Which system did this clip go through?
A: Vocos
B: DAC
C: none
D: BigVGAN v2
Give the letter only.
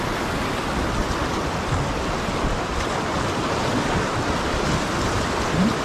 C